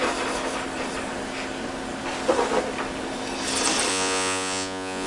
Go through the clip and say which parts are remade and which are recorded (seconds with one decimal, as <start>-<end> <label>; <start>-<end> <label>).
0.0-3.9 recorded; 3.9-5.1 remade